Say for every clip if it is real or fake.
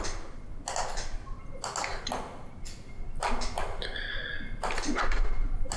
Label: real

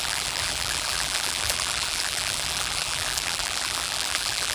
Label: fake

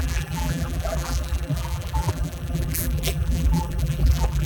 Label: fake